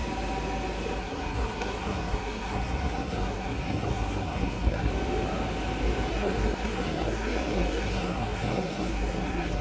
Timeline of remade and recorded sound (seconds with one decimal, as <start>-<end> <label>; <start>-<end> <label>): 0.0-1.0 recorded; 1.0-4.9 remade; 4.9-6.1 recorded; 6.1-9.6 remade